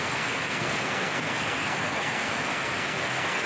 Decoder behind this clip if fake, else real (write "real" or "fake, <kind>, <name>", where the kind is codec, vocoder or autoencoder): fake, codec, SNAC